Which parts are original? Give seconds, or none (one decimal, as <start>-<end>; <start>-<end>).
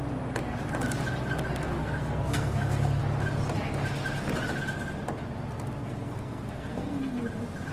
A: 0.0-1.8; 3.0-5.8; 7.2-7.7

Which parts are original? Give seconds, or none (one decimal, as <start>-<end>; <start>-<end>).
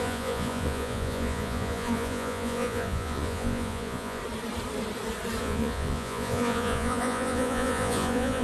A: 4.2-5.4